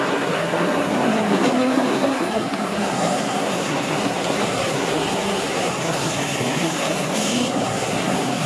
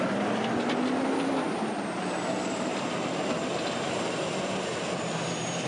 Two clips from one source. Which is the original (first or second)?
second